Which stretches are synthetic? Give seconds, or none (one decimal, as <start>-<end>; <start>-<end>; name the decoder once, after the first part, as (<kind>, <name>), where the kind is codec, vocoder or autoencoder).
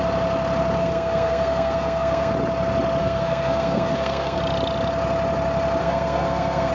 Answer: 0.8-2.3 (codec, SNAC); 3.0-4.4; 5.8-6.7